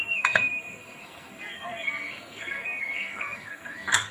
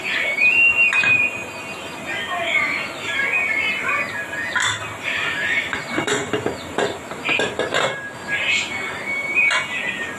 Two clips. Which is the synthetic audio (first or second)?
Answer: first